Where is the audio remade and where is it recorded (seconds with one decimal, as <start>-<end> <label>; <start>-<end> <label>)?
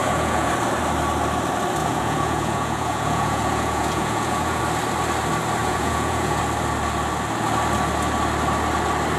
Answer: 0.0-0.5 remade; 0.5-1.8 recorded; 1.8-4.6 remade; 4.6-5.6 recorded; 5.6-6.4 remade; 6.4-9.2 recorded